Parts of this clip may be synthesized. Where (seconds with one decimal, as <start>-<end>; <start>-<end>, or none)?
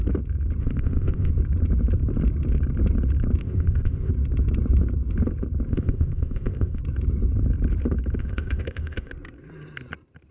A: 0.6-1.3; 3.4-4.1; 5.7-6.8; 8.2-9.1